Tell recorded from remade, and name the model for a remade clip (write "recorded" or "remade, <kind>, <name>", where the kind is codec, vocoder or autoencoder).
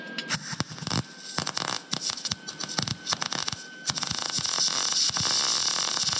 recorded